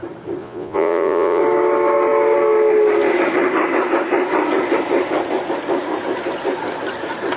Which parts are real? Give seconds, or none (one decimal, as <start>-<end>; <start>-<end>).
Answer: 0.0-0.4; 1.4-7.4